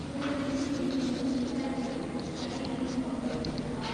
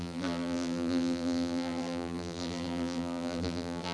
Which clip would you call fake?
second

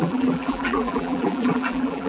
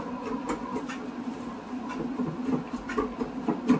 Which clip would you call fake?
first